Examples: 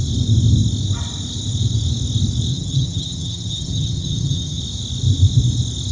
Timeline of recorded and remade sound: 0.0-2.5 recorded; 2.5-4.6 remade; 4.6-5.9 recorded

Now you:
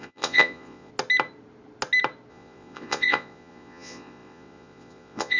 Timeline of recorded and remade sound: 0.0-0.9 remade; 0.9-2.3 recorded; 2.3-5.4 remade